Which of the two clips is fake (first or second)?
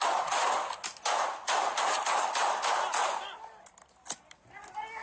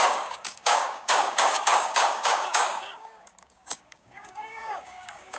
second